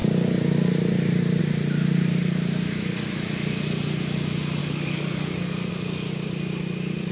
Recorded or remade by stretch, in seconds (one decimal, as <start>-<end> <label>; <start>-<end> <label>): 0.0-4.6 recorded; 4.6-5.7 remade; 5.7-7.1 recorded